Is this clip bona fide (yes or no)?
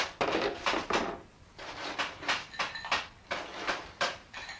yes